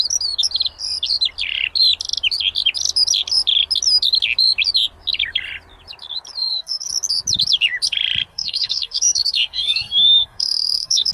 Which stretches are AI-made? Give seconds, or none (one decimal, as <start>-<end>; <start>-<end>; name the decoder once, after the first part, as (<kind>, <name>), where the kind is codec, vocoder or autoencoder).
6.4-6.9 (codec, SNAC); 8.3-11.1